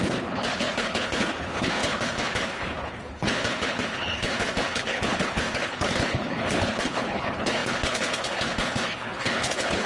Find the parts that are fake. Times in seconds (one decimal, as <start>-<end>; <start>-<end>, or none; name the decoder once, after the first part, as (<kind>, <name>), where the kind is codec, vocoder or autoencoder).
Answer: 0.0-9.9 (codec, HILCodec)